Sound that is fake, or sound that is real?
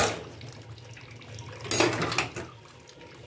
real